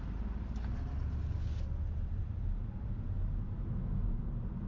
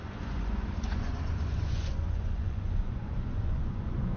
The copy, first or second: second